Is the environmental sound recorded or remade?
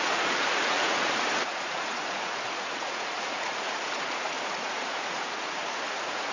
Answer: remade